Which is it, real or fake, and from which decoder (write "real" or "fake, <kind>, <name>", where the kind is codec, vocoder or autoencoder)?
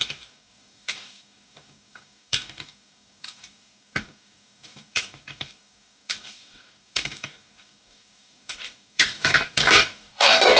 fake, codec, DAC